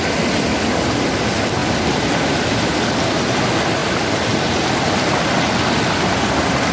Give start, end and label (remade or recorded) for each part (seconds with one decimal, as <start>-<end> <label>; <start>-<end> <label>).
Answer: 0.0-6.7 recorded